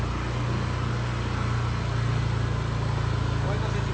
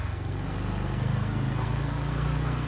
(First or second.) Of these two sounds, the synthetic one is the second